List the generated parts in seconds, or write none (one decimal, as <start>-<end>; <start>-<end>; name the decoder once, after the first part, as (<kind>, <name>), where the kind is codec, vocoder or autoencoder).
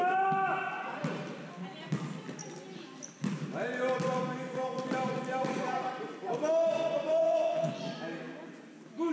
7.2-7.7 (vocoder, WaveNeXt)